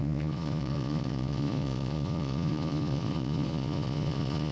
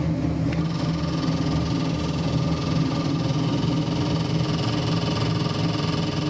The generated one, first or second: first